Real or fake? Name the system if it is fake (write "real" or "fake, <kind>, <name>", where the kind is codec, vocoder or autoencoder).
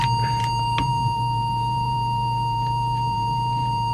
fake, vocoder, BigVGAN v2